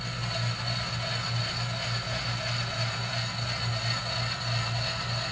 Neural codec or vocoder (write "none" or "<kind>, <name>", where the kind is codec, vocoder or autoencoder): none